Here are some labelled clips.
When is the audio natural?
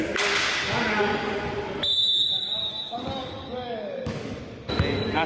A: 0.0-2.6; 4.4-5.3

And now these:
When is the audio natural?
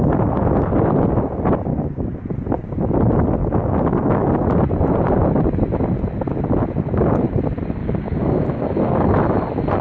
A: 0.0-1.7; 2.3-3.4; 4.3-7.8; 9.1-9.8